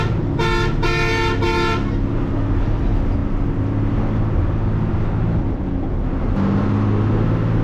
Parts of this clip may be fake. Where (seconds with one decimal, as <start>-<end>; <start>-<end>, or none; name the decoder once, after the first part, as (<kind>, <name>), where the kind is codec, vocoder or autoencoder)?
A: none